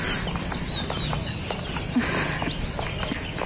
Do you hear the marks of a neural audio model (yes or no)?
no